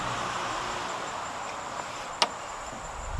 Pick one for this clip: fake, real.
real